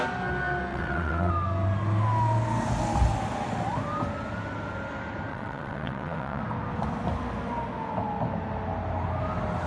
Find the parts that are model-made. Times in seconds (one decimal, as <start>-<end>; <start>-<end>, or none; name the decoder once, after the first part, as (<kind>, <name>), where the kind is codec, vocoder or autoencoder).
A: 0.7-1.3 (vocoder, WaveNeXt); 5.3-6.4